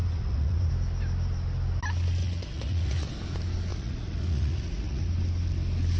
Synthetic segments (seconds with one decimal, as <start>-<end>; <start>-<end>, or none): 0.0-0.7; 2.2-3.1; 3.7-5.1